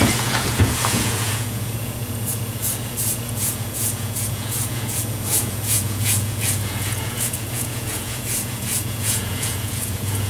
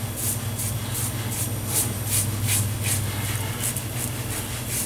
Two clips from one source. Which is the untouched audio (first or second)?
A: second